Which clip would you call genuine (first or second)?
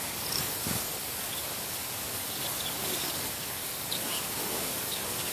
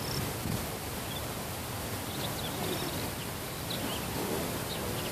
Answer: second